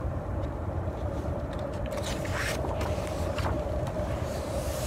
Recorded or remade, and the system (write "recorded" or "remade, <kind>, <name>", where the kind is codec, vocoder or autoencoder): remade, vocoder, BigVGAN v2